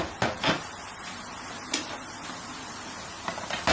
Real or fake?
real